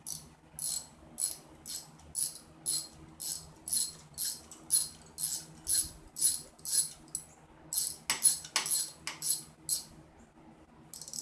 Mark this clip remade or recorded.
recorded